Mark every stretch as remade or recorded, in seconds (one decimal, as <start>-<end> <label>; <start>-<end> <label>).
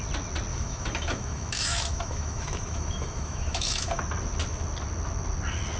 0.0-0.5 recorded; 0.5-4.0 remade; 4.0-5.8 recorded